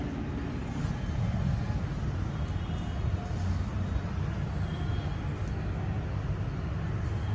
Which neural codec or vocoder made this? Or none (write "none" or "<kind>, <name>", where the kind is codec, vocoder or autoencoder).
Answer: none